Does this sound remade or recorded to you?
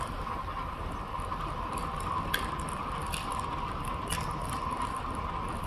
recorded